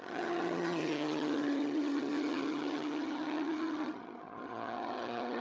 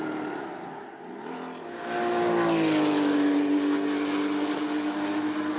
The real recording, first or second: second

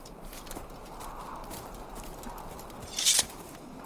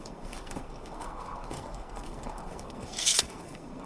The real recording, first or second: first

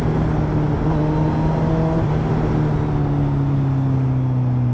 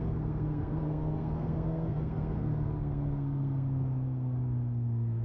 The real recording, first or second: first